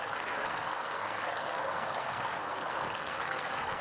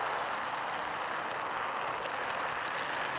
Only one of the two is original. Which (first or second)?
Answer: second